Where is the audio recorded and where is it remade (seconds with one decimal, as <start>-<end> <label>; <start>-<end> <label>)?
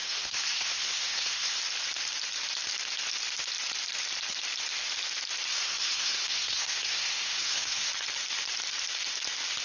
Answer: 0.0-1.6 remade; 1.6-5.5 recorded; 5.5-7.9 remade; 7.9-9.6 recorded